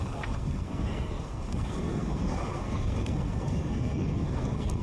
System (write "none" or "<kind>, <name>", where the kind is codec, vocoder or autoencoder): codec, SNAC